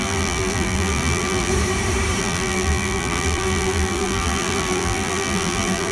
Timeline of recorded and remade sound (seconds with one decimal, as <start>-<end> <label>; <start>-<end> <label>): 0.0-1.5 remade; 1.5-2.2 recorded; 2.2-5.9 remade